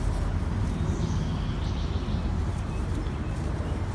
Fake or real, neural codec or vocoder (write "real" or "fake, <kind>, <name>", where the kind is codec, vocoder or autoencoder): real